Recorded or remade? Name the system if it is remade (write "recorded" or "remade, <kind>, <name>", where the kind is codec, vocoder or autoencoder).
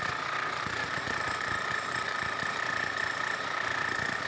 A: recorded